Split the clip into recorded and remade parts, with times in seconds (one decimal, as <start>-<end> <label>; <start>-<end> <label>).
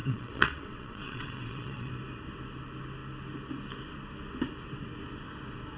0.0-1.9 remade; 1.9-5.8 recorded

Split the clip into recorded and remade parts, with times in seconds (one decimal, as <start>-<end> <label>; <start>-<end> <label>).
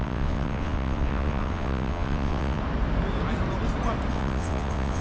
0.0-2.6 remade; 2.6-4.1 recorded; 4.1-5.0 remade